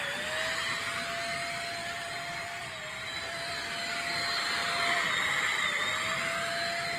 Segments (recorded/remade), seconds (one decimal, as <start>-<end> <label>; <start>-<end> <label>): 0.0-1.8 recorded; 1.8-3.5 remade; 3.5-4.6 recorded; 4.6-6.2 remade; 6.2-7.0 recorded